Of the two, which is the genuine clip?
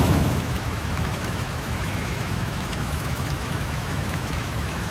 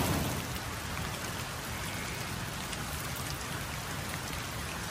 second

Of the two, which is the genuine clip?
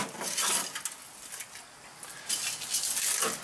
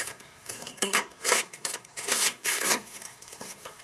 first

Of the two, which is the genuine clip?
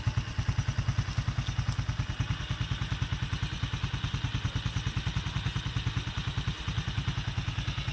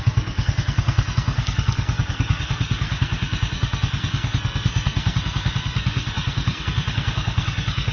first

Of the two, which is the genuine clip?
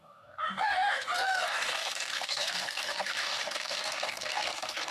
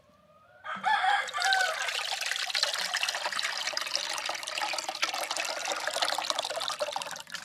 second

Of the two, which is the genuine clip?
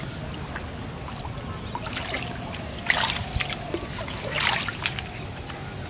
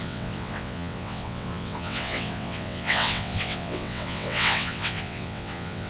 first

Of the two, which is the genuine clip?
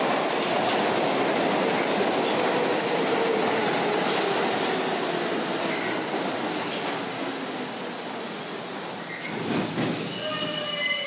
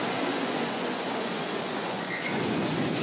first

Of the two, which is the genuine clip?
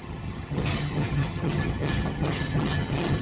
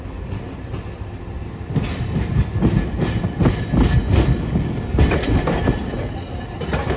second